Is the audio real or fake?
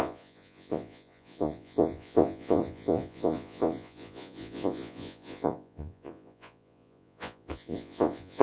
fake